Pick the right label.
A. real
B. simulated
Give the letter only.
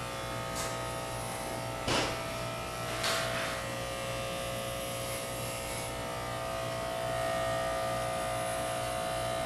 A